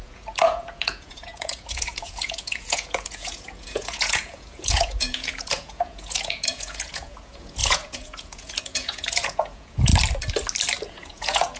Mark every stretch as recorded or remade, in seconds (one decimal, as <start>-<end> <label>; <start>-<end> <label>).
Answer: 0.0-9.9 remade; 9.9-10.9 recorded; 10.9-11.6 remade